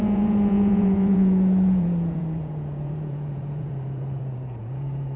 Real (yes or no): no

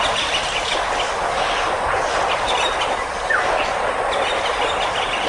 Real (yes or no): yes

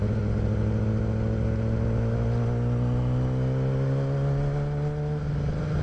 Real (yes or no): yes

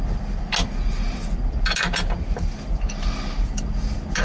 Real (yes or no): yes